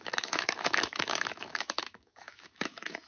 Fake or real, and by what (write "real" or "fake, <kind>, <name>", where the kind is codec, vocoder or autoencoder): fake, autoencoder, DAC-VAE